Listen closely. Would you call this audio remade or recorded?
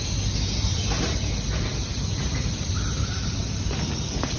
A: recorded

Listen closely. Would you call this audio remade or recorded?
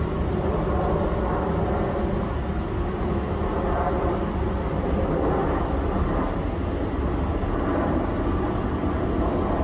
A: recorded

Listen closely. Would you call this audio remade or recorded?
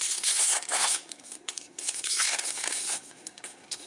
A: remade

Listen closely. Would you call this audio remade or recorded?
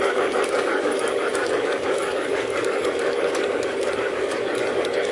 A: remade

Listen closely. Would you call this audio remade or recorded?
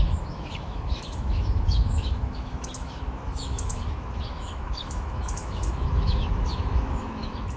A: remade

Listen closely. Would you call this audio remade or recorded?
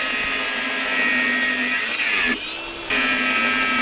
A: recorded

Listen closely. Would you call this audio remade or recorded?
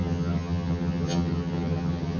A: remade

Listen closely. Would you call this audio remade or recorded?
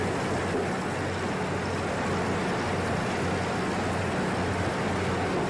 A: recorded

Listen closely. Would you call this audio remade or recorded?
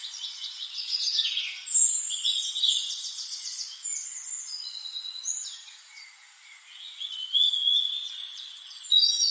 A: remade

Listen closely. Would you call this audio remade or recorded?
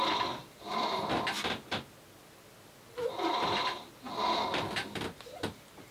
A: recorded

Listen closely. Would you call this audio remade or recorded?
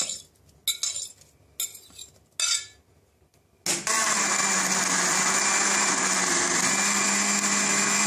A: recorded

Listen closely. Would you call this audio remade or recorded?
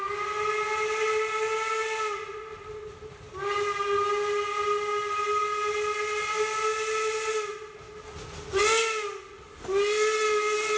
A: recorded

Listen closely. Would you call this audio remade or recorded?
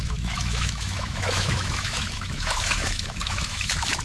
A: remade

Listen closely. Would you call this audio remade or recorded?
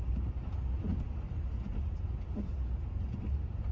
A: recorded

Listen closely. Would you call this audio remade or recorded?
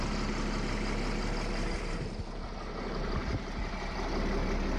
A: recorded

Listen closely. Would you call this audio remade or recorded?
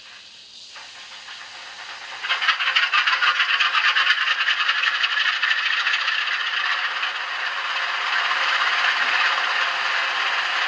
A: recorded